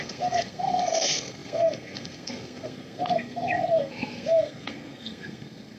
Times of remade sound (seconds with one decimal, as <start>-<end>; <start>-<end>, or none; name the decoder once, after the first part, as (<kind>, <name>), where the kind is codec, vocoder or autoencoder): 0.0-5.8 (codec, SNAC)